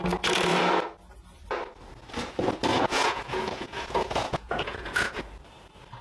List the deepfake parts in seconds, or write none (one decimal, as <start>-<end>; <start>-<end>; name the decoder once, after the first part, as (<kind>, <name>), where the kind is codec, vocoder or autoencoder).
2.7-5.2 (vocoder, Vocos)